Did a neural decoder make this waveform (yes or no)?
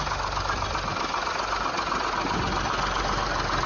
no